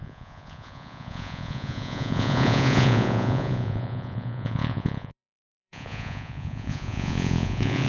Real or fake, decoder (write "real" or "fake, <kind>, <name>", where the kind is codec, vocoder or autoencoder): fake, vocoder, Vocos